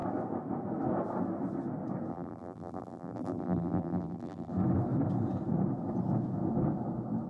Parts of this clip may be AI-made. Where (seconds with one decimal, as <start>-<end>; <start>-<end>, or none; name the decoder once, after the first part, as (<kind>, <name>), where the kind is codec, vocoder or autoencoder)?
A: 2.1-4.5 (vocoder, BigVGAN v2)